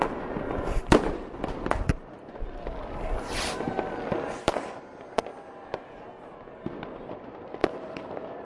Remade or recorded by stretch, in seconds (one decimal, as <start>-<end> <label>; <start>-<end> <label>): 0.0-5.3 remade; 5.3-6.2 recorded; 6.2-8.4 remade